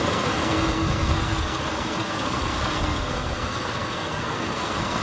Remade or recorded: remade